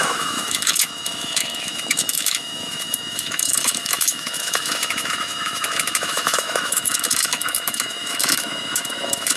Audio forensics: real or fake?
fake